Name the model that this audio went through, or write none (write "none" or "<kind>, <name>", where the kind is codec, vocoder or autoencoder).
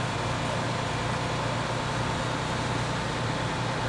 none